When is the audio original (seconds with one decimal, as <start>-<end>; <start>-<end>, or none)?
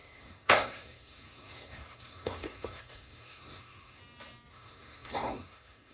4.0-4.5